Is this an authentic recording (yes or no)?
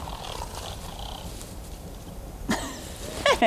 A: no